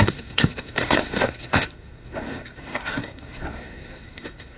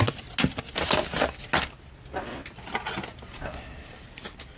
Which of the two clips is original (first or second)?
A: second